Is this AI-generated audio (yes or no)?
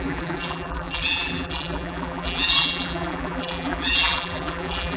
yes